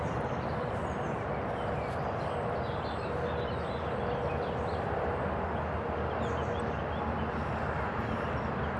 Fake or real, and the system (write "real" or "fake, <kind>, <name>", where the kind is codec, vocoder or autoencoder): real